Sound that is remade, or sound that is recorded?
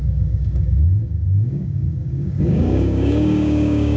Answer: remade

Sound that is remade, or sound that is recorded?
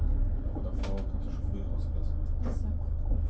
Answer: recorded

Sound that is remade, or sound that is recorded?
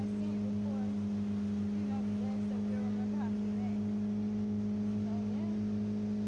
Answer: recorded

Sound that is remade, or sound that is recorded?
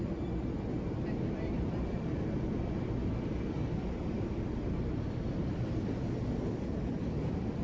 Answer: remade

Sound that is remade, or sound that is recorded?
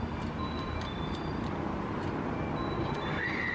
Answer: recorded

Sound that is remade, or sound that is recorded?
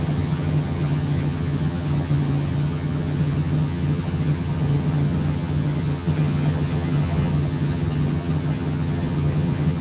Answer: remade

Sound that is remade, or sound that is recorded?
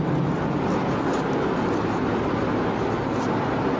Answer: recorded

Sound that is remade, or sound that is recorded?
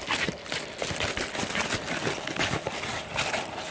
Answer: recorded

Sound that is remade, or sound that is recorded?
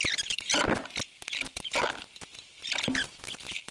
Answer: recorded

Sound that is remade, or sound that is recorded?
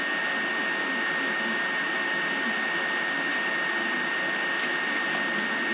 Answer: recorded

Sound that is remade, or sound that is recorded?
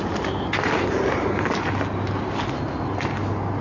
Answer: recorded